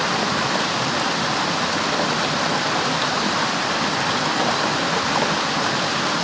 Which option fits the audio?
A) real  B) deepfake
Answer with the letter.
B